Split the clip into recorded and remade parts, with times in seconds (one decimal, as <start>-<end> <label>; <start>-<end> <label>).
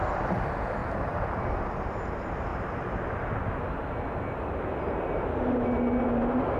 0.0-0.8 recorded; 0.8-1.5 remade; 1.5-2.5 recorded; 2.5-3.0 remade; 3.0-6.6 recorded